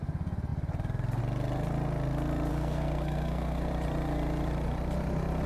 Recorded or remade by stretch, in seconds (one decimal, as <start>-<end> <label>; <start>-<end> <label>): 0.0-2.5 recorded; 2.5-3.7 remade; 3.7-5.5 recorded